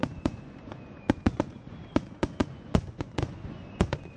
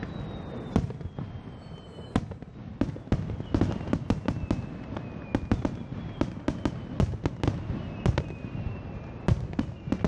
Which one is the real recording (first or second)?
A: second